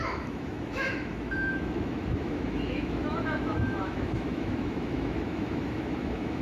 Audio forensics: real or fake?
fake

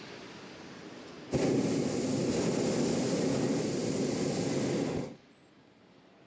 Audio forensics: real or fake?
real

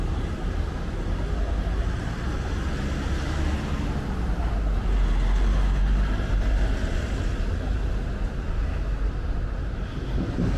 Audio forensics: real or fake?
real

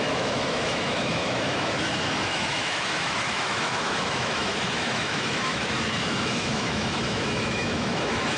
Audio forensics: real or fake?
fake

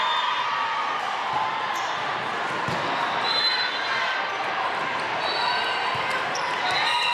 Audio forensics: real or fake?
real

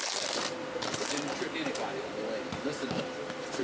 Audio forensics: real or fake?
real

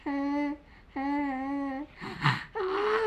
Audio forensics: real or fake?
real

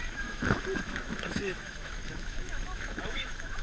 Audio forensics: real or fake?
fake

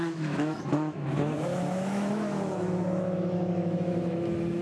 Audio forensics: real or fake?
fake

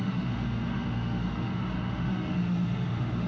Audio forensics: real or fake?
fake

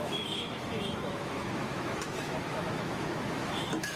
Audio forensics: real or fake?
fake